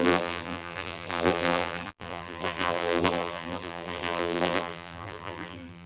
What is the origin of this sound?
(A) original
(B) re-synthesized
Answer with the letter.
B